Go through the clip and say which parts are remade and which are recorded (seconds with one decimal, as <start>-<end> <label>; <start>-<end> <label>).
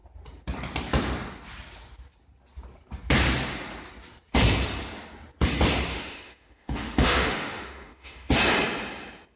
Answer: 0.0-5.9 recorded; 5.9-8.3 remade; 8.3-9.4 recorded